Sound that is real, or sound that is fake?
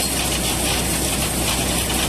real